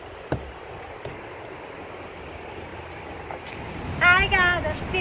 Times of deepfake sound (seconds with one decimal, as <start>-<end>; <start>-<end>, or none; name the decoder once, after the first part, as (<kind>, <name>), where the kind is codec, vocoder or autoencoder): none